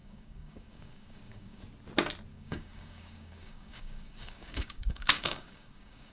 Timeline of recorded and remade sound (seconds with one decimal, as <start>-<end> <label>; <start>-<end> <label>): 0.0-1.6 remade; 1.6-2.3 recorded; 2.3-6.1 remade

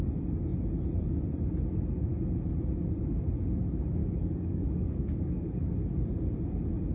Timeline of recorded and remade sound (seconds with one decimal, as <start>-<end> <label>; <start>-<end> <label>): 0.0-4.0 recorded; 4.0-5.7 remade; 5.7-6.9 recorded